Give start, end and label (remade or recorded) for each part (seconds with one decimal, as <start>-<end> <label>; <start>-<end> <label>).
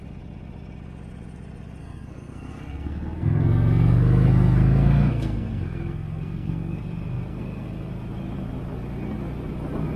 0.0-1.8 recorded; 1.8-6.8 remade; 6.8-7.3 recorded; 7.3-7.9 remade; 7.9-10.0 recorded